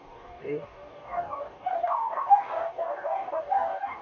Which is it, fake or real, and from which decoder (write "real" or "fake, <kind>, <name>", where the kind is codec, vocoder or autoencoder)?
fake, codec, DAC